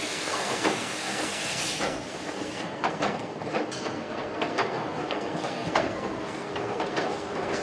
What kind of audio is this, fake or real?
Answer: fake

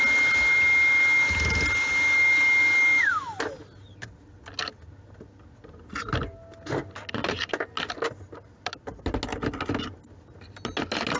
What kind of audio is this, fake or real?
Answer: real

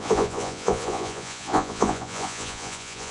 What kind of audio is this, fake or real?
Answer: fake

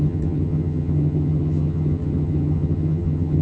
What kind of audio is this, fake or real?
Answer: fake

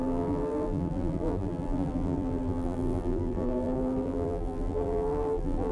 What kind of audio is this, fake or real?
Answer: fake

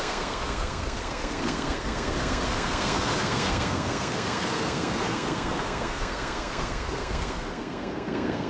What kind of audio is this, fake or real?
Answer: fake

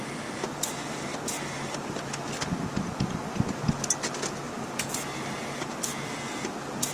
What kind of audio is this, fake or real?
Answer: real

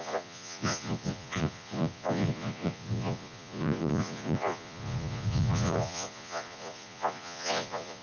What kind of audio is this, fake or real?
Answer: fake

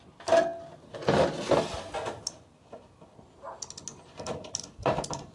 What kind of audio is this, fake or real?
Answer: real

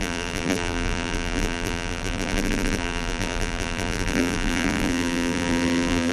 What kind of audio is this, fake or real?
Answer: fake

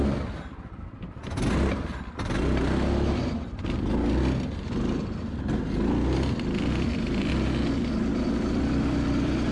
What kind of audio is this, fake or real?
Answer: real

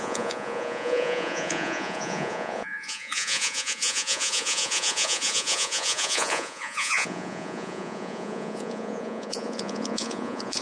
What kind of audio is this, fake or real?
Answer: fake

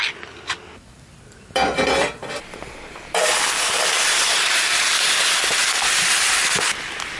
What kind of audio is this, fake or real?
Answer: real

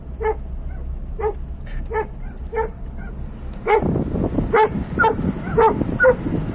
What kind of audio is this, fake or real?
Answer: real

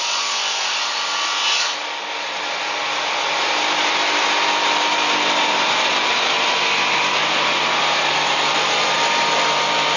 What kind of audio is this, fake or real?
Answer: real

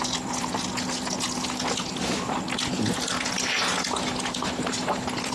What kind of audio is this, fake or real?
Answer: real